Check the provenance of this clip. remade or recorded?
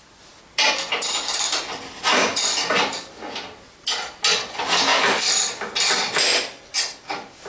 recorded